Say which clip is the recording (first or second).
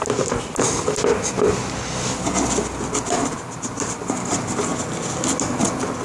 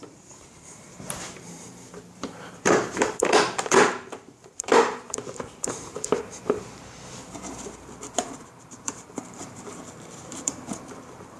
first